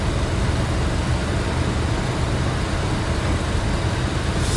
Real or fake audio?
real